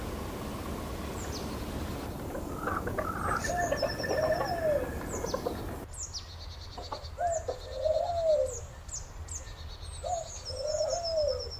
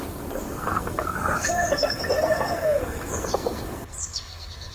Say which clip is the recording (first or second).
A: first